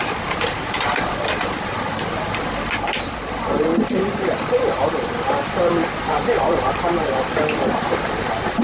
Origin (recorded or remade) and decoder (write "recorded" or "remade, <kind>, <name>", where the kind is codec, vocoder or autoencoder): remade, vocoder, BigVGAN v2